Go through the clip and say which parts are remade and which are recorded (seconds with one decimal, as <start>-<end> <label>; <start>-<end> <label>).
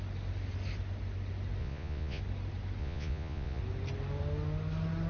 0.0-1.6 recorded; 1.6-2.2 remade; 2.2-2.8 recorded; 2.8-3.6 remade; 3.6-5.1 recorded